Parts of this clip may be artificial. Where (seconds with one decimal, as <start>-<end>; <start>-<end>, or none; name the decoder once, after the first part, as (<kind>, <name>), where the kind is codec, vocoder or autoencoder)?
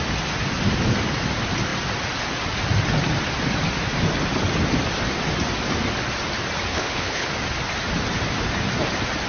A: 6.7-7.3 (codec, HILCodec)